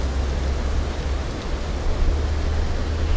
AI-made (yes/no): no